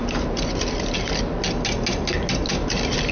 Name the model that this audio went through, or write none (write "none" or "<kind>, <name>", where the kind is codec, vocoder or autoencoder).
none